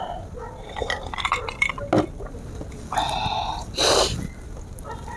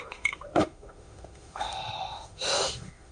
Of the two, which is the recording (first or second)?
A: first